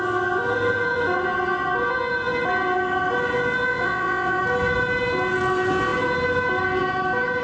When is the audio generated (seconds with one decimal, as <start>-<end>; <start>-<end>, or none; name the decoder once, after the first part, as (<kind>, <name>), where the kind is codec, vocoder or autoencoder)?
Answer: 3.7-4.4 (vocoder, WaveNeXt)